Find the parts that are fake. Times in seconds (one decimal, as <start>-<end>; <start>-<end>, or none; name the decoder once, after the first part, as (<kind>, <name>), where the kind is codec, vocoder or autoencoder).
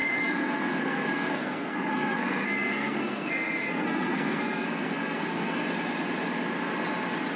0.0-5.6 (codec, SNAC)